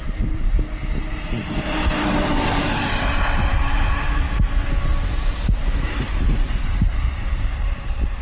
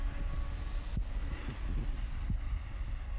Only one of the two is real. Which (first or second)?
second